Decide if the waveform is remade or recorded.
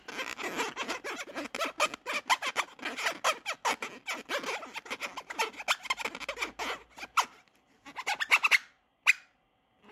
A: recorded